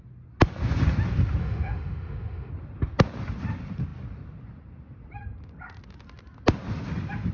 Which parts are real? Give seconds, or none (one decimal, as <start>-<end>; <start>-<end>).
0.0-1.4; 2.5-7.3

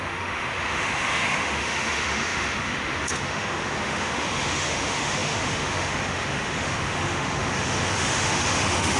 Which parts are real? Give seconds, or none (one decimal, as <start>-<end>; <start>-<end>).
none